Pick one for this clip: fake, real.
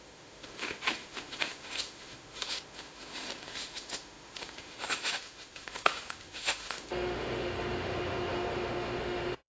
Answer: fake